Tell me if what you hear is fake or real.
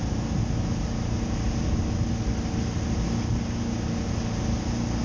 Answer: real